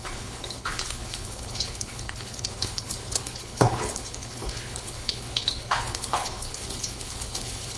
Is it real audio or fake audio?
fake